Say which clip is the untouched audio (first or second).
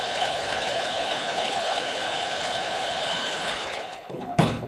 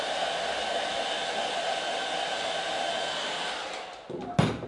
second